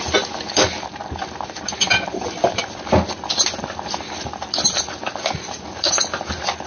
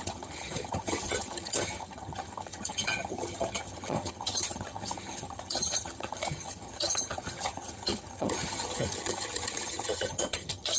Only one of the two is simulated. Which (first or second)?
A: second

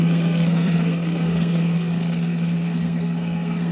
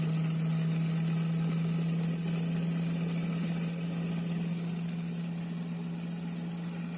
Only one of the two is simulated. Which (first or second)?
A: first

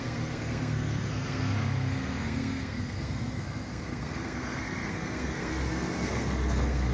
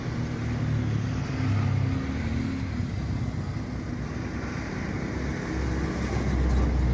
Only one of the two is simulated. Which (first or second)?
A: first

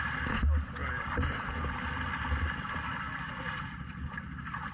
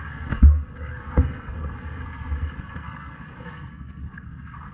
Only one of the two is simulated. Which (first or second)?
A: second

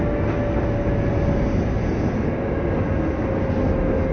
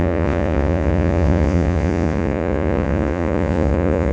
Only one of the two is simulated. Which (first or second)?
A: second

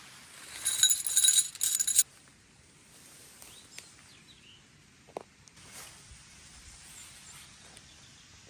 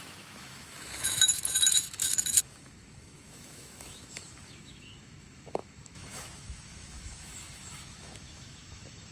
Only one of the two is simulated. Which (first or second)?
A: second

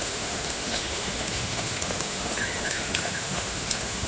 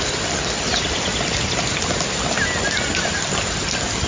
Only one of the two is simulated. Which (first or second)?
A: first